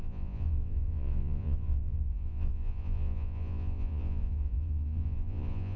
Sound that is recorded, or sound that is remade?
remade